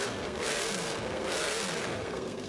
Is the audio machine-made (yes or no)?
yes